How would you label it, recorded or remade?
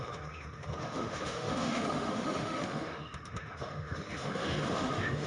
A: remade